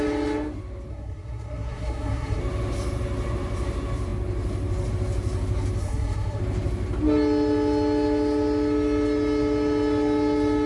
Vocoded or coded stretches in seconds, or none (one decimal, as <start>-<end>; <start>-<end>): 0.9-2.4; 5.8-6.4